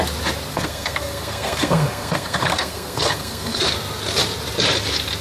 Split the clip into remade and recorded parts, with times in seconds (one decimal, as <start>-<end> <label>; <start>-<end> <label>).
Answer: 0.0-0.5 recorded; 0.5-3.6 remade; 3.6-5.2 recorded